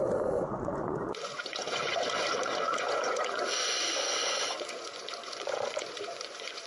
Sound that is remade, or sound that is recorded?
remade